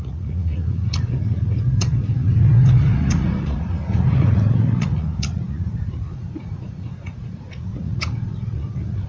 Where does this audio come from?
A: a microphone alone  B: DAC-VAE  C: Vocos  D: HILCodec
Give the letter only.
C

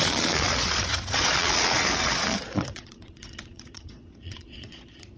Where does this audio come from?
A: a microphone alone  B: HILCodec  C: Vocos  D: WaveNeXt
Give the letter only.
C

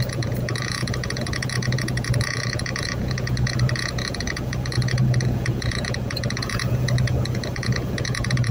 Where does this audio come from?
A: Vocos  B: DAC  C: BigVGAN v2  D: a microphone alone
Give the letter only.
A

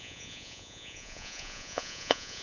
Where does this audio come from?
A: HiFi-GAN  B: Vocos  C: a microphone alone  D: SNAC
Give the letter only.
B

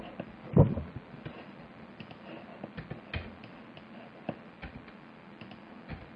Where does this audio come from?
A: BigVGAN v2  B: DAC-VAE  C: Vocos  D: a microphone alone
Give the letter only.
D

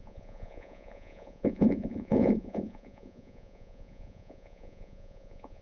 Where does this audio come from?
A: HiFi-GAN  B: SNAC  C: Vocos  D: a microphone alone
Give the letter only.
C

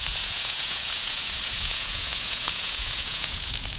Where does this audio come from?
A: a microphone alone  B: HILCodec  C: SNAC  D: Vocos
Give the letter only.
D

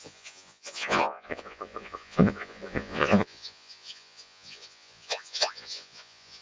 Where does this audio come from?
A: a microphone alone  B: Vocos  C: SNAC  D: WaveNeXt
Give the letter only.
B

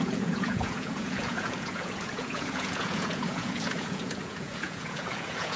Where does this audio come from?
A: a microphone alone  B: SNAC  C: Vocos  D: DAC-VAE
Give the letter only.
C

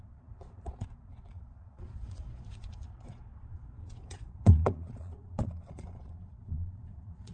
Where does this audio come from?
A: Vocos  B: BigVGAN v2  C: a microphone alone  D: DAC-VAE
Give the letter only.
A